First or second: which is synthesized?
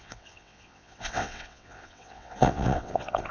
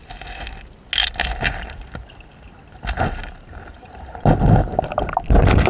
first